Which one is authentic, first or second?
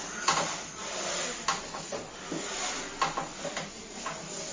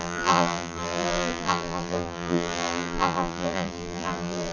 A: first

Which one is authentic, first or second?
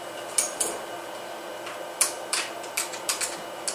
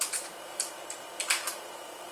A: first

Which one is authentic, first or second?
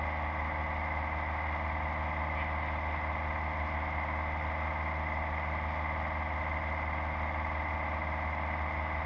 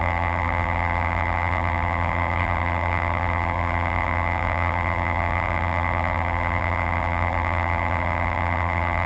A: first